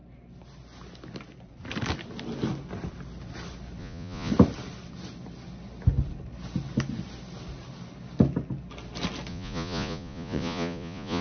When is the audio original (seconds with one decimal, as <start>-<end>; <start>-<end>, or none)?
0.0-3.8; 4.3-9.3